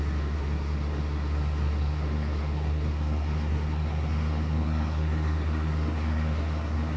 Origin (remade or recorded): remade